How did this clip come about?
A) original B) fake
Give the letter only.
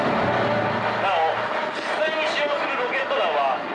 A